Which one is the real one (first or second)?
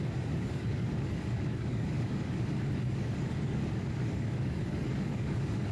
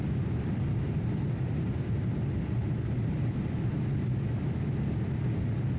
second